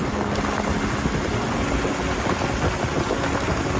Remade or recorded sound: recorded